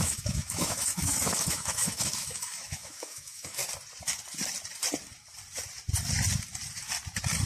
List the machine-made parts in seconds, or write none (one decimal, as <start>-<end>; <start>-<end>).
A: 0.0-3.6